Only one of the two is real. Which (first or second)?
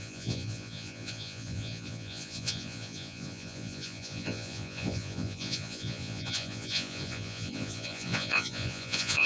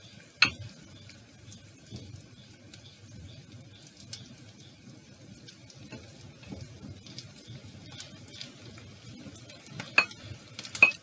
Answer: second